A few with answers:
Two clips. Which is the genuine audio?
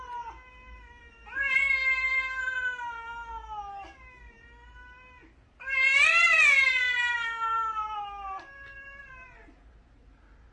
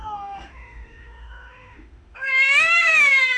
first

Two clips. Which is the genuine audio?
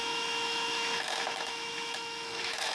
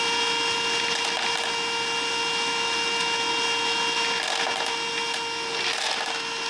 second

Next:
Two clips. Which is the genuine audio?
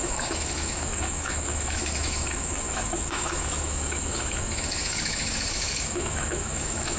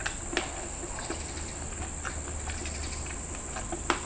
second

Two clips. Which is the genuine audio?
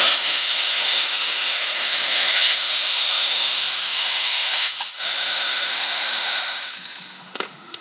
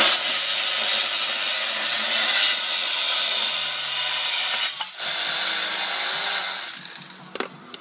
second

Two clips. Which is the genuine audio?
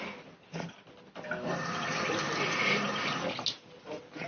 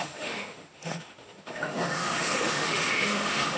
first